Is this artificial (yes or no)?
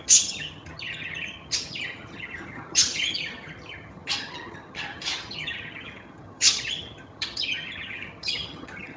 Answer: yes